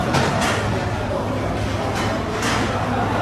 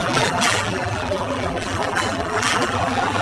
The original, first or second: first